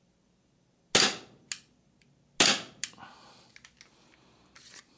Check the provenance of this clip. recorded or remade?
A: recorded